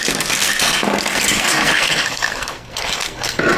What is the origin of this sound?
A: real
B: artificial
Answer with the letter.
B